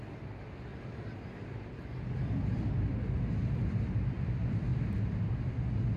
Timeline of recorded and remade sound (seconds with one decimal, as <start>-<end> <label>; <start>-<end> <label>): 0.0-6.0 recorded